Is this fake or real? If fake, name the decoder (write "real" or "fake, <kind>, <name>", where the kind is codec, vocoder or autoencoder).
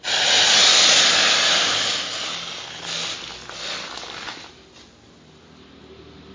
real